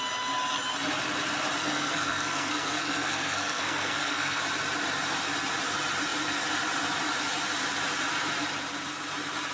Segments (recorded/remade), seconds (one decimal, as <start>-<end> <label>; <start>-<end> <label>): 0.0-1.6 recorded; 1.6-4.4 remade; 4.4-9.5 recorded